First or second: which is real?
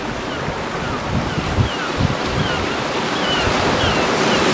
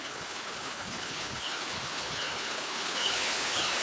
first